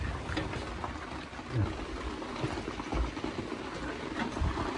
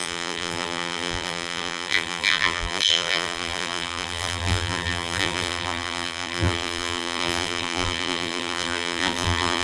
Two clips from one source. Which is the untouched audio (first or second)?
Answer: first